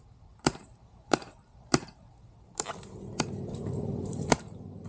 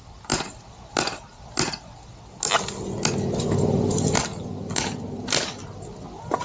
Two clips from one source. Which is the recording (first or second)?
second